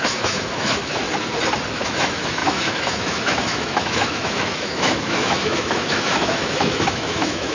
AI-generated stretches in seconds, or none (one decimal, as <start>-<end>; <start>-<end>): 0.0-1.0; 1.7-7.5